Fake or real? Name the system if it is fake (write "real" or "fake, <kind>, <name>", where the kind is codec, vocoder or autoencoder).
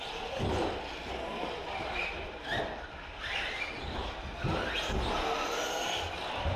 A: real